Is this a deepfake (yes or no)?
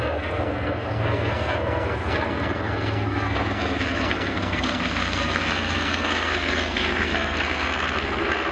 yes